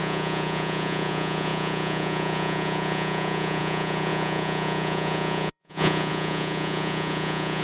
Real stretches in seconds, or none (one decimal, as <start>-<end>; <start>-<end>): none